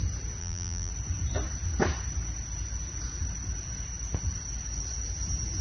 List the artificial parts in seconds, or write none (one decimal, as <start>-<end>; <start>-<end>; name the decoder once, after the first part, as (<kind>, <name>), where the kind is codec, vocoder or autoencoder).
0.4-0.9 (vocoder, BigVGAN v2)